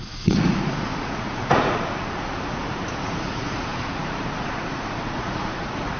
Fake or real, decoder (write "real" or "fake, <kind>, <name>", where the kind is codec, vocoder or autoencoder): fake, vocoder, Vocos